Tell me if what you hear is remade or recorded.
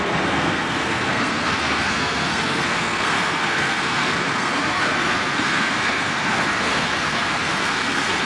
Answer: remade